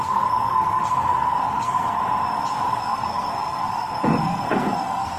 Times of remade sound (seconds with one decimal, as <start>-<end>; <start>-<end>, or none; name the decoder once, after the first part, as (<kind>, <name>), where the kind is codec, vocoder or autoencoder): 0.0-2.0 (codec, SNAC); 2.7-5.2

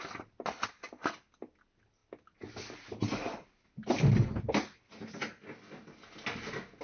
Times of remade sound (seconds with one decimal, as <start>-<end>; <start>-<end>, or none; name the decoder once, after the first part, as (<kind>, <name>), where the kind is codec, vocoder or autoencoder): none